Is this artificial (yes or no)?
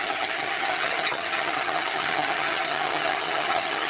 yes